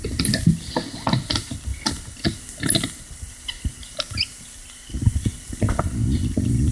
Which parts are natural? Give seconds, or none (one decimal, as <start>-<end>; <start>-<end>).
0.0-6.7